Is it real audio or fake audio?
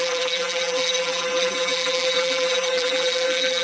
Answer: fake